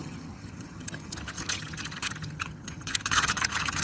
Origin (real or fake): fake